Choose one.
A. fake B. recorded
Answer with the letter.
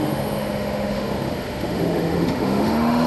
A